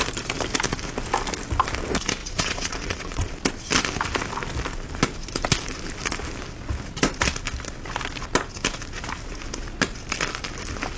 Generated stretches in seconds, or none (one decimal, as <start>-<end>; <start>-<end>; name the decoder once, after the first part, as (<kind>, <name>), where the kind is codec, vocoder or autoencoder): 2.2-3.3 (vocoder, WaveNeXt)